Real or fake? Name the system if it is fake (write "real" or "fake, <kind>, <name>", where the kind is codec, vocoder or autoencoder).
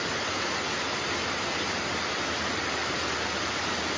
real